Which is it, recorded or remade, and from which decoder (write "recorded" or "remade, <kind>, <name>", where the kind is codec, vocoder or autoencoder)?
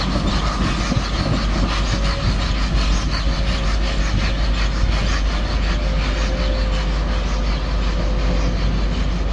recorded